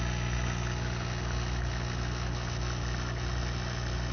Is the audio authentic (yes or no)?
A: yes